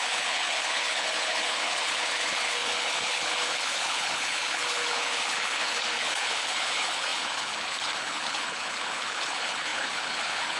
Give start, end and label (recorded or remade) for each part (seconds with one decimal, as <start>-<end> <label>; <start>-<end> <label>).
0.0-10.6 remade